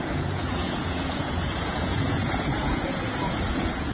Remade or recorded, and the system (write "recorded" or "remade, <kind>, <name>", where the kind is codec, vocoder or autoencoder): remade, vocoder, Vocos